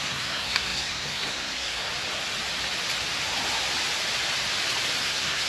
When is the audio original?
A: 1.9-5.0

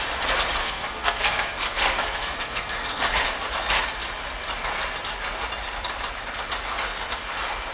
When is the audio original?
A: 0.0-0.6; 3.1-7.7

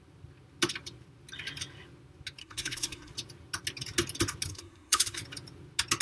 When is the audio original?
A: 0.0-2.4; 3.1-4.5; 5.2-6.0

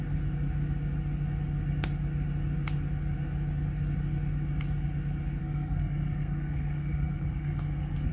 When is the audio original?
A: 0.0-5.4

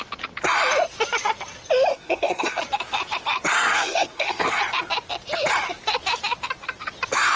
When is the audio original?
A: 0.0-1.9; 2.6-3.5; 4.6-7.4